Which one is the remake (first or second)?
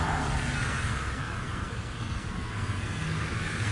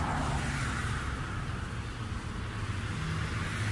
first